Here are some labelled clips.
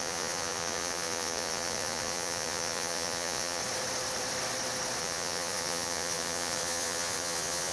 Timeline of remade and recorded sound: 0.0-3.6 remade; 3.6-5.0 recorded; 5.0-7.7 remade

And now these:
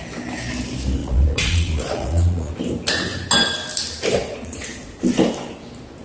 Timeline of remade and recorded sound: 0.0-1.0 recorded; 1.0-2.5 remade; 2.5-4.2 recorded; 4.2-5.0 remade; 5.0-6.0 recorded